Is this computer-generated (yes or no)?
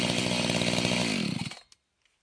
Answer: no